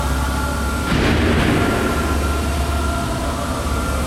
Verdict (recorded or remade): recorded